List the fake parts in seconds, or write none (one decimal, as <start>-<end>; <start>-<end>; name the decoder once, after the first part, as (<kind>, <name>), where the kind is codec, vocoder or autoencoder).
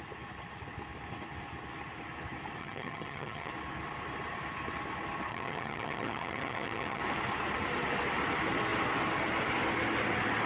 2.6-3.5 (vocoder, HiFi-GAN); 5.3-7.0